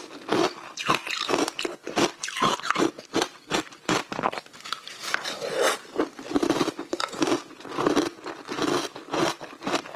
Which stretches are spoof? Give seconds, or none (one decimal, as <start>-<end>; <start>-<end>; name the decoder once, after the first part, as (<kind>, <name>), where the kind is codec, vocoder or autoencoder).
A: 5.8-6.6 (vocoder, BigVGAN v2)